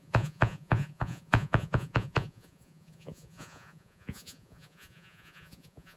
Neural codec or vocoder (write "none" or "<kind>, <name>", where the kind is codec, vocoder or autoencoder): vocoder, Vocos